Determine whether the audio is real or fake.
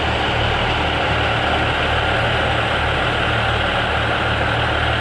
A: real